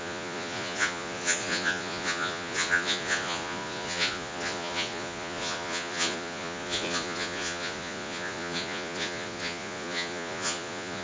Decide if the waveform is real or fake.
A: fake